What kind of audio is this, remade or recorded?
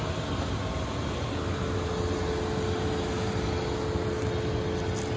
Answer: recorded